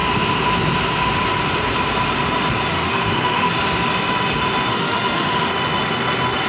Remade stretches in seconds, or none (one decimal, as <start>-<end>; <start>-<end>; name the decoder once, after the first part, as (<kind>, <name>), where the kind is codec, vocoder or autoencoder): 2.7-3.5 (autoencoder, DAC-VAE); 4.7-5.5